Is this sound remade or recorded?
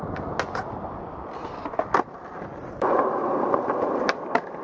recorded